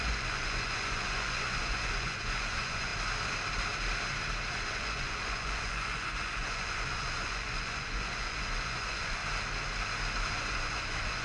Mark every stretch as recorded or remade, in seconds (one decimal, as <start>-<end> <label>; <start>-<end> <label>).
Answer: 0.0-2.9 remade; 2.9-4.5 recorded; 4.5-9.2 remade; 9.2-10.3 recorded; 10.3-11.2 remade